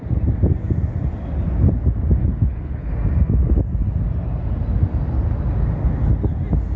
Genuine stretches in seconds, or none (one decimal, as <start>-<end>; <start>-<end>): 0.0-2.2; 2.9-6.8